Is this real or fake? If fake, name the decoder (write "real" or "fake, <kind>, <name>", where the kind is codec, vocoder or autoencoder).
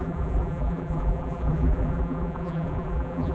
fake, vocoder, BigVGAN v2